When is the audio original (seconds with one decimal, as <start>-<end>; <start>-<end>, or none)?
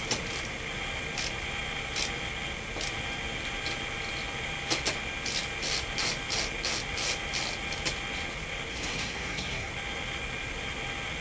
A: 0.0-8.7; 9.7-11.2